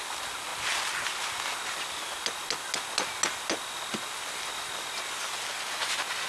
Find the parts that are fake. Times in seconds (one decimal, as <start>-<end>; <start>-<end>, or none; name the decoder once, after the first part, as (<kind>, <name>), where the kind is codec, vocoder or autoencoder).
none